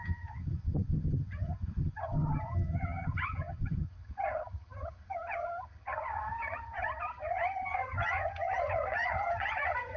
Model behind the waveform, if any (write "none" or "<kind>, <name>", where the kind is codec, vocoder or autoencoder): vocoder, HiFi-GAN